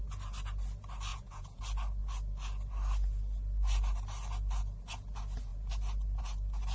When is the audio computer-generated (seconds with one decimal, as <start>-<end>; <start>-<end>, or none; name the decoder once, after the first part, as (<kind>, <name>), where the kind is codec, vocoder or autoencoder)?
1.1-1.6 (vocoder, Vocos)